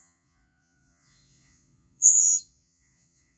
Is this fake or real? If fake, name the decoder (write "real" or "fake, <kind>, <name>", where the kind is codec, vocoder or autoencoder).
fake, vocoder, Vocos